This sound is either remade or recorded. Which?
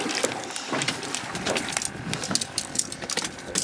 recorded